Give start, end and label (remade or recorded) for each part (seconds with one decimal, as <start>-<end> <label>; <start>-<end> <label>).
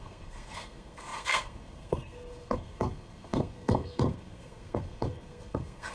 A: 0.0-5.9 remade